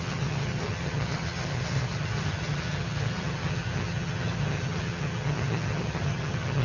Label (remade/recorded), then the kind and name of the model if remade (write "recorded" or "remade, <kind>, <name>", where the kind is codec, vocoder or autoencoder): remade, vocoder, HiFi-GAN